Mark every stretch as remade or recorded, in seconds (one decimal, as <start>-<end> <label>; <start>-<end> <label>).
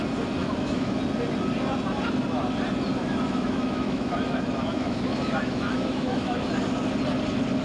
0.0-0.4 recorded; 0.4-1.0 remade; 1.0-2.9 recorded; 2.9-6.5 remade; 6.5-7.6 recorded